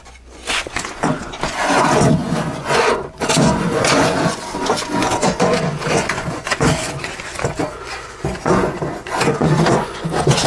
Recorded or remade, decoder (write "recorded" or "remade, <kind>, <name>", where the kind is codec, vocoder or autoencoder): remade, vocoder, Vocos